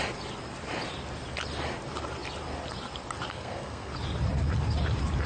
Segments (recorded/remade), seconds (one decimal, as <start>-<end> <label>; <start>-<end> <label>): 0.0-3.3 recorded; 3.3-3.9 remade; 3.9-5.3 recorded